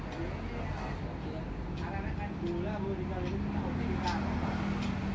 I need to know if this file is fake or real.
real